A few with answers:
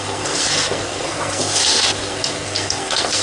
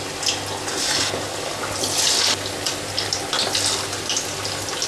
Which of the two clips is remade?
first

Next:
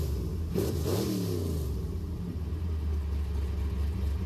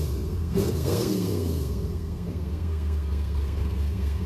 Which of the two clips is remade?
second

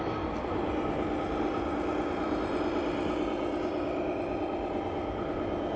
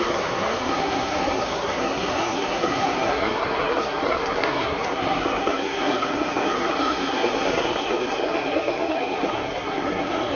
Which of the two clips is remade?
second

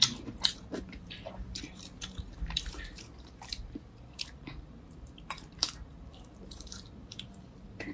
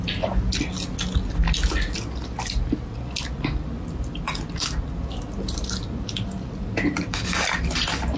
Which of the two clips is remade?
first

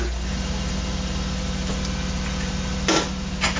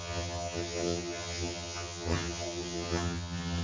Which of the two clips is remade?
second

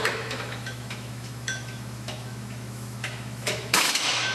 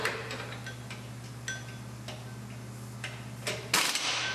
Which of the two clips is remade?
first